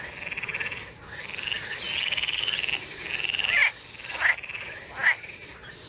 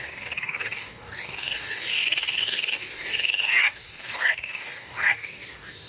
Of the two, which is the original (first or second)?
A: first